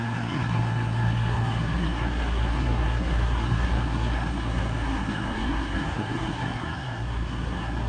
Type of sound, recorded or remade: remade